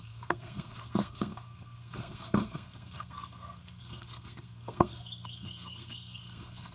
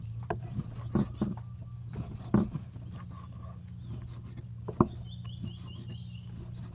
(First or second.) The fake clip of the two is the first